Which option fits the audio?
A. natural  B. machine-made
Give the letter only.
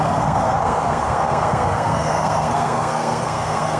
B